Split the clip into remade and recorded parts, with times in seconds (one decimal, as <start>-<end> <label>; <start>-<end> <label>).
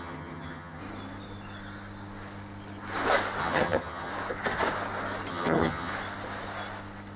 0.0-0.8 remade; 0.8-3.4 recorded; 3.4-4.1 remade; 4.1-5.3 recorded; 5.3-5.9 remade; 5.9-7.2 recorded